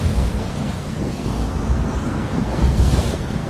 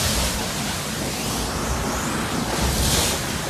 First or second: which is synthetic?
first